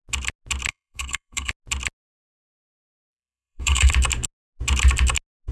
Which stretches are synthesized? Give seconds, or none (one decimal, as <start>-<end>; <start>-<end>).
0.7-1.5; 3.1-3.9